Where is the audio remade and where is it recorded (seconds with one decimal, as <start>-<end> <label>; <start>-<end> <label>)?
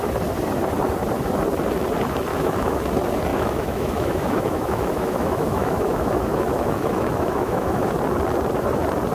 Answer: 0.0-2.3 recorded; 2.3-2.8 remade; 2.8-3.3 recorded; 3.3-8.0 remade; 8.0-9.1 recorded